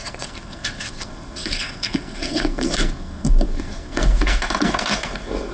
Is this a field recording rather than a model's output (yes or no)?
no